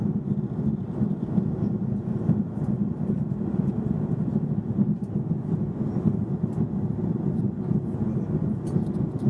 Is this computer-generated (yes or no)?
no